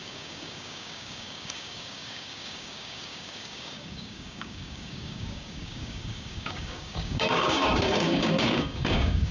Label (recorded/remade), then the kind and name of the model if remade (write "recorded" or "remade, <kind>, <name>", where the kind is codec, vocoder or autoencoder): remade, codec, DAC